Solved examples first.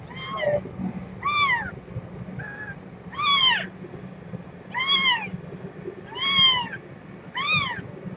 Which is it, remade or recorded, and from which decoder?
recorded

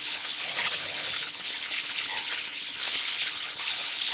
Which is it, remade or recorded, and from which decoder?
remade, codec, HILCodec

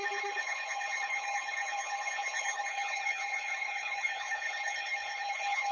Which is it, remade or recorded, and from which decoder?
remade, codec, HILCodec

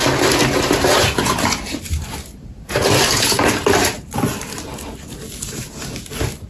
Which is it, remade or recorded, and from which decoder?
recorded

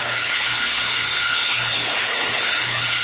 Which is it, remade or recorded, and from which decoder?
remade, codec, HILCodec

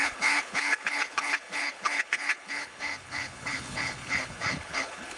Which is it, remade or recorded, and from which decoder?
remade, codec, HILCodec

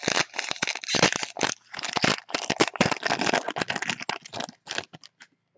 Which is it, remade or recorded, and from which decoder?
recorded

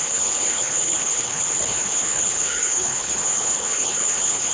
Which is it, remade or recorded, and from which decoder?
remade, codec, HILCodec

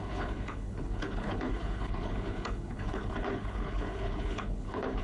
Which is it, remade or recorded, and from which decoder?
remade, codec, HILCodec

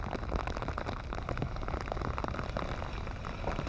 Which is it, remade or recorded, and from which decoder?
recorded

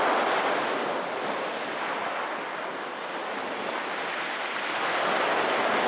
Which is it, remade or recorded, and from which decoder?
recorded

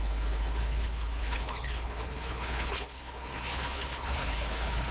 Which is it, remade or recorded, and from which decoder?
remade, codec, HILCodec